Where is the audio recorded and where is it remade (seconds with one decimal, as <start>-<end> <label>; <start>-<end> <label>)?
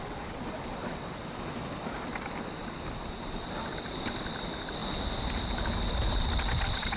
0.0-7.0 recorded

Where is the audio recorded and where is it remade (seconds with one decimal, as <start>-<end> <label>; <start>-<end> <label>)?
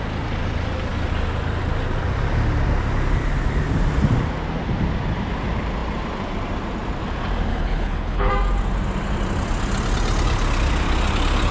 0.0-7.5 recorded; 7.5-8.3 remade; 8.3-11.5 recorded